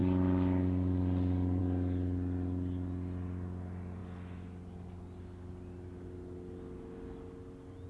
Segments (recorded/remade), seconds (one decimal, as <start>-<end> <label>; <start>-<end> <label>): 0.0-7.9 recorded